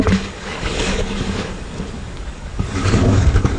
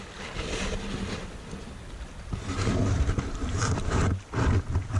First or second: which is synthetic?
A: first